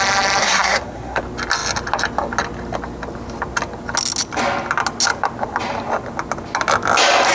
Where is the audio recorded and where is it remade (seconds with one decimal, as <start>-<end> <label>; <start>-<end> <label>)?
0.0-0.4 recorded; 0.4-1.2 remade; 1.2-7.3 recorded